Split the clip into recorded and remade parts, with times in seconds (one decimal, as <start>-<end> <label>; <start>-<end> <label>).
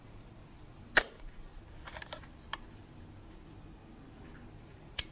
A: 0.0-0.4 remade; 0.4-1.0 recorded; 1.0-1.5 remade; 1.5-4.6 recorded; 4.6-5.1 remade